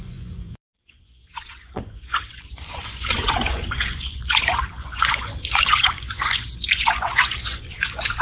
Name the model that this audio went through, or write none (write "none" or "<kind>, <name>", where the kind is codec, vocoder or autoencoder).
vocoder, Vocos